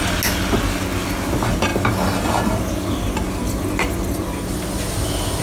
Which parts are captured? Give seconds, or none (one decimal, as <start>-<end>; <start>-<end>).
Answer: 0.0-5.4